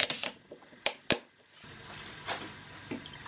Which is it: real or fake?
real